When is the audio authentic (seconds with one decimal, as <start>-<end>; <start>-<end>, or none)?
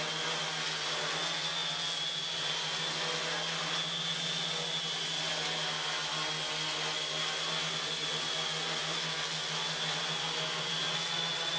0.0-11.6